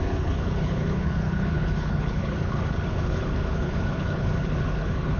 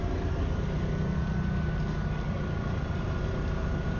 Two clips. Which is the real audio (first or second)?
second